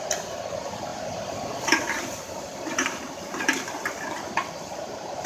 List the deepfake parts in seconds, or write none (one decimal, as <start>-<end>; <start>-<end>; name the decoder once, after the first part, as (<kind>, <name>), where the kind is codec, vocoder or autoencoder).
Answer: 0.0-5.3 (vocoder, BigVGAN v2)